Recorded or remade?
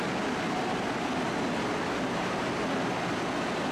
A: recorded